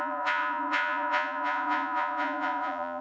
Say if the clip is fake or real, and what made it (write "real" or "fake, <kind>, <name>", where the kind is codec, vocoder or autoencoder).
fake, vocoder, Vocos